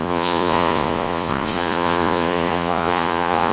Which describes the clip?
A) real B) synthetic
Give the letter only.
B